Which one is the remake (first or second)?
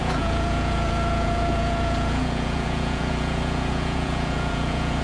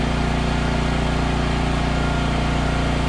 first